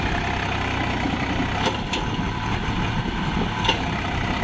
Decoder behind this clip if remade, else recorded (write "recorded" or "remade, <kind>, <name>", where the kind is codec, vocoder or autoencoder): recorded